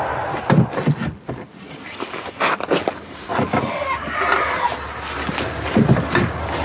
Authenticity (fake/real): real